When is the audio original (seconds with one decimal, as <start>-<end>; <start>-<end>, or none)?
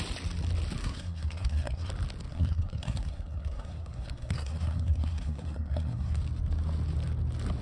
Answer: 0.0-0.8; 1.9-2.3; 6.2-7.6